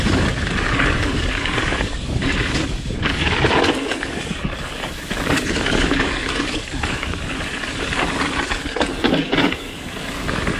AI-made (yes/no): yes